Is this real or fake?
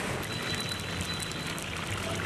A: real